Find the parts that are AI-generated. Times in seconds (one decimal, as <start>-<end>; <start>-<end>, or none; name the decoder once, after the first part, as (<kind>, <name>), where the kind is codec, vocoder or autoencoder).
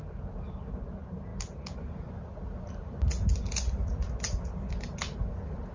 none